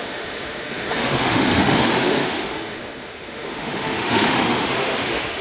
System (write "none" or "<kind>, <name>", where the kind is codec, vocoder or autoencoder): autoencoder, DAC-VAE